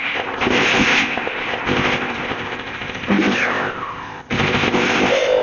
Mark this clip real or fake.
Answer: fake